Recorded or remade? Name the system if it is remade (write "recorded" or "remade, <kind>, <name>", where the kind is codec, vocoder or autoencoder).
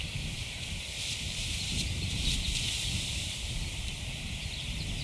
remade, vocoder, BigVGAN v2